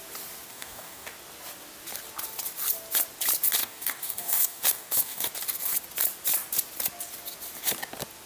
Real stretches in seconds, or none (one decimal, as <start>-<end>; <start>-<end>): 0.0-0.5; 1.1-3.6; 5.3-8.3